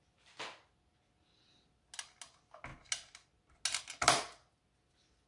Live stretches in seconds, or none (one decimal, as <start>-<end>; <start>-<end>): 0.0-5.3